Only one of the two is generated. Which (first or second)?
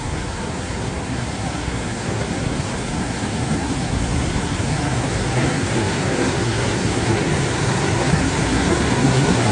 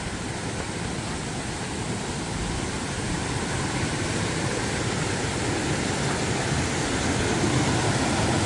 first